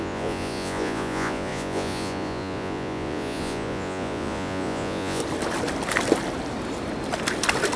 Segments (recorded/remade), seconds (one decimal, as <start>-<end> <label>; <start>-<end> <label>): 0.0-5.2 remade; 5.2-7.8 recorded